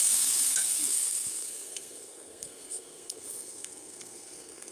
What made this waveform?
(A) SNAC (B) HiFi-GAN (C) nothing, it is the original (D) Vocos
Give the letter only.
A